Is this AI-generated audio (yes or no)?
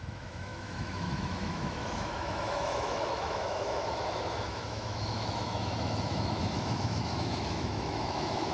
yes